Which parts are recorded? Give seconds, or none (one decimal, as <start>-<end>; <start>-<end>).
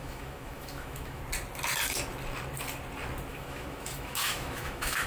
1.2-3.3